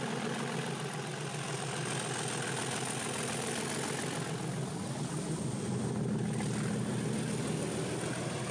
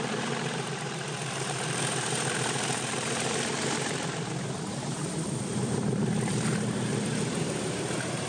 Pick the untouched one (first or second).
first